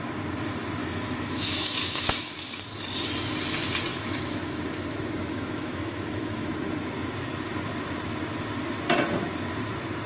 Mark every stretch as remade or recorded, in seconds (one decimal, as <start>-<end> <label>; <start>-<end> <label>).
0.0-0.8 recorded; 0.8-2.7 remade; 2.7-3.9 recorded; 3.9-6.5 remade; 6.5-10.1 recorded